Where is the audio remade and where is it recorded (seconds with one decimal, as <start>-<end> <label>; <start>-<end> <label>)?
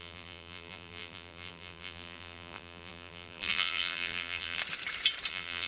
0.0-4.6 remade; 4.6-5.3 recorded; 5.3-5.7 remade